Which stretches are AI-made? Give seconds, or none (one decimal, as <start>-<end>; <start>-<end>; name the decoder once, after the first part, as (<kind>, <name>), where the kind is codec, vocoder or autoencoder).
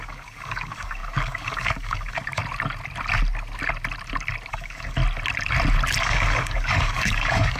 0.0-2.4 (codec, DAC); 4.5-5.0; 6.0-7.6